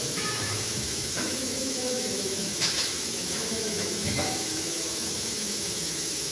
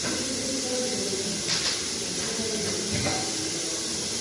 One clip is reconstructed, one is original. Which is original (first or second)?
second